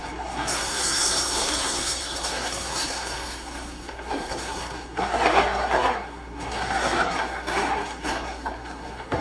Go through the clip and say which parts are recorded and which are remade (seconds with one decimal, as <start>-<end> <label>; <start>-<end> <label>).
0.0-9.2 remade